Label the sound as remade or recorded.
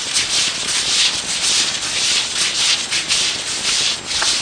recorded